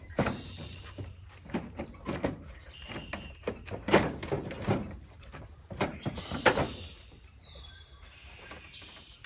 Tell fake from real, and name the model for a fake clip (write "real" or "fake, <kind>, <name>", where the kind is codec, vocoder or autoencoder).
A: fake, vocoder, BigVGAN v2